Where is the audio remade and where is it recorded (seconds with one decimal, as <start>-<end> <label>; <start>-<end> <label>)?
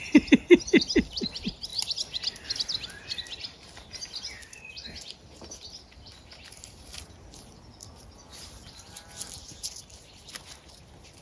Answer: 0.0-11.2 recorded